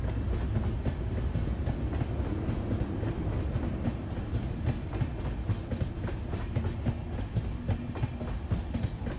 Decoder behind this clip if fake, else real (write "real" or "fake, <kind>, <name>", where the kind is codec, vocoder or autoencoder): real